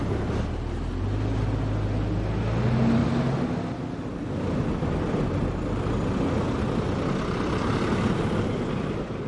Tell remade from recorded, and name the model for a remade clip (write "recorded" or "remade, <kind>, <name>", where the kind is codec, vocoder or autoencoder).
recorded